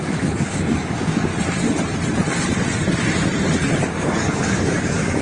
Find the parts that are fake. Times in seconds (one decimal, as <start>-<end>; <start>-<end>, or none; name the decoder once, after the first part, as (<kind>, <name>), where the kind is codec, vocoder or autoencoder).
0.0-1.3 (codec, DAC); 3.9-5.2